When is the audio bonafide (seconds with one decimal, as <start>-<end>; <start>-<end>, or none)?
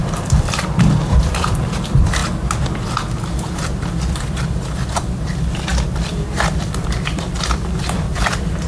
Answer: 2.2-3.5